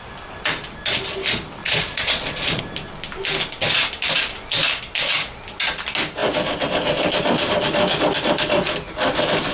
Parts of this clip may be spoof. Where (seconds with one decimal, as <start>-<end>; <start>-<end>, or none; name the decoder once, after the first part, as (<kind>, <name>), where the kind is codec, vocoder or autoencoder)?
1.6-2.6 (vocoder, Vocos)